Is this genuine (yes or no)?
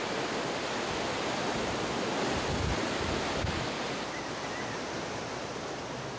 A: yes